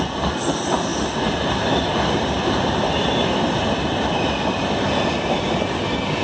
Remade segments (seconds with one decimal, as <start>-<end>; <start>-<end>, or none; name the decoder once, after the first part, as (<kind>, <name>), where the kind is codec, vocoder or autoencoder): none